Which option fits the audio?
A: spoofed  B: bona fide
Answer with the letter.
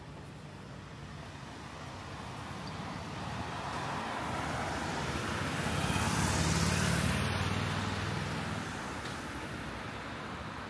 B